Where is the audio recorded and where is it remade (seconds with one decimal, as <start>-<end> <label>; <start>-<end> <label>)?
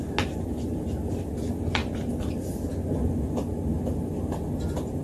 0.0-5.0 recorded